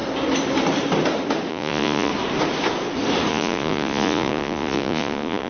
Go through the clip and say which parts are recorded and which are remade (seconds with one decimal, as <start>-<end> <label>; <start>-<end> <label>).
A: 0.0-1.5 recorded; 1.5-2.1 remade; 2.1-3.3 recorded; 3.3-5.5 remade